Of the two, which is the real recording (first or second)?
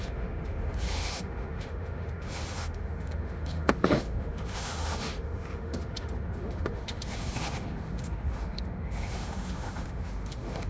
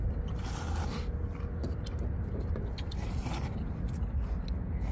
second